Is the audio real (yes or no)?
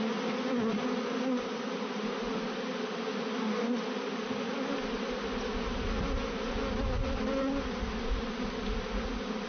yes